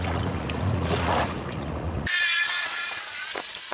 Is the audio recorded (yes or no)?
no